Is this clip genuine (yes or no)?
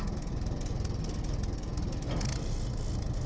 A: yes